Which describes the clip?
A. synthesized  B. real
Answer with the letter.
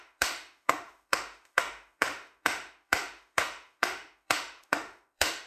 A